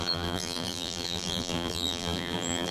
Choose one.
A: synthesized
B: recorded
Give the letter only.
A